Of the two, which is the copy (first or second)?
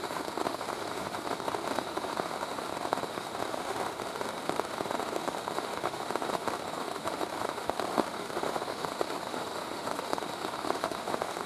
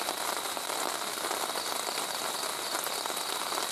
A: first